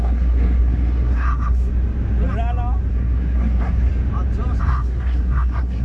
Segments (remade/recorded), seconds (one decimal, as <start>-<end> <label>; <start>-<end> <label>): 0.0-1.7 remade; 1.7-2.9 recorded; 2.9-3.9 remade; 3.9-4.6 recorded; 4.6-5.8 remade